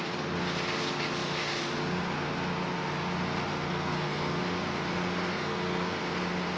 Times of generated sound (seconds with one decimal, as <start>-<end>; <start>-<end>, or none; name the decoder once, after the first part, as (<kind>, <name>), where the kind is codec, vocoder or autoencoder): 3.7-4.4 (codec, SNAC); 5.3-6.0